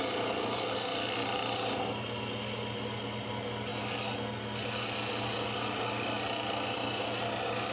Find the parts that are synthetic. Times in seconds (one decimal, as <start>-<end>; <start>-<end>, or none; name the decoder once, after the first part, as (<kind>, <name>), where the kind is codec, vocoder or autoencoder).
none